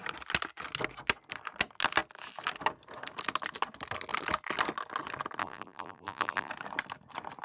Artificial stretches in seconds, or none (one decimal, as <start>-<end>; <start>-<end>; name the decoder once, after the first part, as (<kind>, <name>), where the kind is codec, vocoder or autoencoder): 5.4-6.5 (vocoder, BigVGAN v2)